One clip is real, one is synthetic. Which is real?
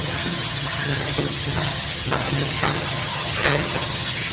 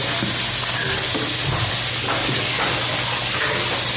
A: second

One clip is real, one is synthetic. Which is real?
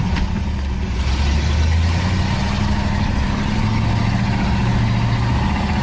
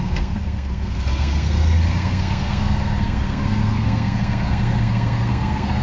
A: first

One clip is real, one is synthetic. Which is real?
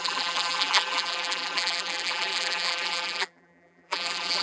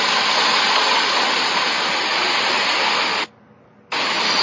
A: second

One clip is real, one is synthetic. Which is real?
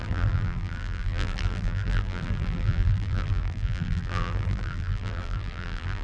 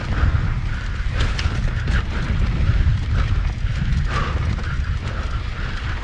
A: second